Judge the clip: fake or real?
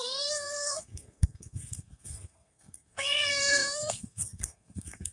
fake